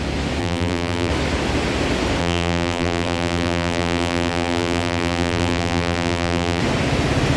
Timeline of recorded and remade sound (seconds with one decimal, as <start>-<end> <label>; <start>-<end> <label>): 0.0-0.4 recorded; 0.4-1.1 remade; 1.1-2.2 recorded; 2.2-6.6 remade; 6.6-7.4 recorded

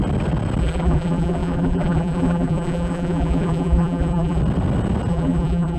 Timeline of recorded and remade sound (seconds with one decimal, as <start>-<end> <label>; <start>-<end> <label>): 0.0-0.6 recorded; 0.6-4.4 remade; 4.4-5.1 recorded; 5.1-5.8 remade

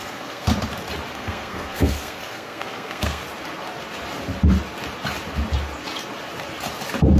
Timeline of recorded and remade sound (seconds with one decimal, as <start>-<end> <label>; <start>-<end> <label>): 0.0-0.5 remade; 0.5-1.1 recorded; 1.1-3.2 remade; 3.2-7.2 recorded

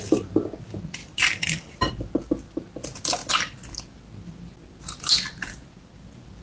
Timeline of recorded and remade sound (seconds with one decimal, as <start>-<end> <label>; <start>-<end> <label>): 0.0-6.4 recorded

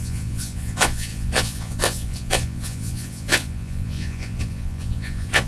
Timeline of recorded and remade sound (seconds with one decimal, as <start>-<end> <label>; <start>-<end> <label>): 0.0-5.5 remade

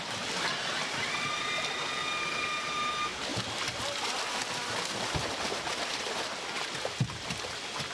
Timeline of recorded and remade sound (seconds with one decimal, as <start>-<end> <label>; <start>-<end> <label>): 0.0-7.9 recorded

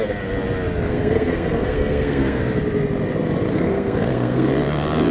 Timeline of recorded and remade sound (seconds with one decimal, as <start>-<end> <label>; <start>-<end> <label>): 0.0-0.9 recorded; 0.9-2.4 remade; 2.4-3.5 recorded; 3.5-4.5 remade; 4.5-5.1 recorded